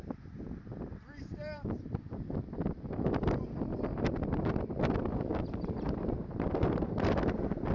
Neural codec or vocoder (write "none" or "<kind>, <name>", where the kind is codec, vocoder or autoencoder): vocoder, BigVGAN v2